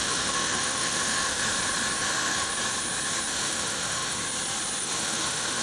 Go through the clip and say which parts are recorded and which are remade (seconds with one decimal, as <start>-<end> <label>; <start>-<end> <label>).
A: 0.0-1.4 remade; 1.4-2.1 recorded; 2.1-2.5 remade; 2.5-3.3 recorded; 3.3-4.2 remade; 4.2-4.8 recorded; 4.8-5.6 remade